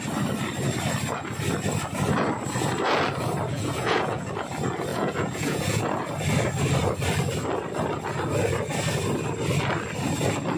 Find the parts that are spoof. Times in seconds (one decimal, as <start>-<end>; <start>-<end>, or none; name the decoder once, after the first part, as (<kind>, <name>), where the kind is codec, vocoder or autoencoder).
3.5-4.3 (vocoder, Vocos); 4.9-5.8